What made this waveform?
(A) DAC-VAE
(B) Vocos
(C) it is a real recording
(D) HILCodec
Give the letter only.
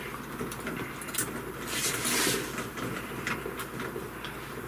C